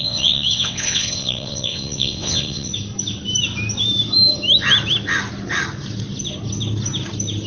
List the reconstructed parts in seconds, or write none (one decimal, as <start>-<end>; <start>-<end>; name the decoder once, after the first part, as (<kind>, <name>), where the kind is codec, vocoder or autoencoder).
0.0-2.7 (vocoder, WaveNeXt)